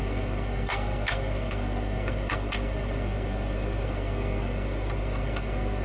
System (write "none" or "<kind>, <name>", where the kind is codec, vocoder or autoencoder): codec, SNAC